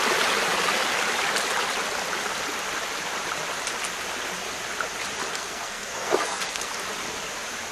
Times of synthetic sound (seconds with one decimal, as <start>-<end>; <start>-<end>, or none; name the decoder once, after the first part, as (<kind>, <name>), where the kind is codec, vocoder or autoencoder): 5.3-6.7 (codec, SNAC)